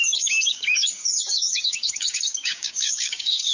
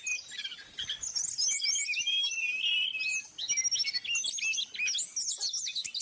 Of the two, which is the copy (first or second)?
first